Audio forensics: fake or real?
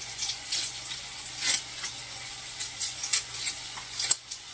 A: fake